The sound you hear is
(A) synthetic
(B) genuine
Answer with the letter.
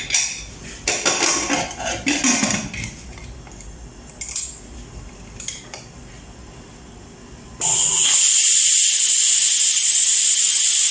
B